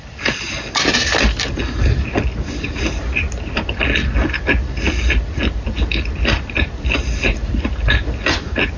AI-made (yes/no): no